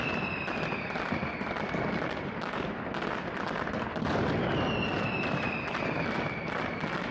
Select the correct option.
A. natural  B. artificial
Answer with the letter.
A